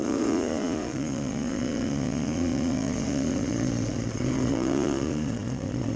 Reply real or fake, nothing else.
fake